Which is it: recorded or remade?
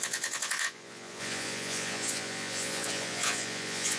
remade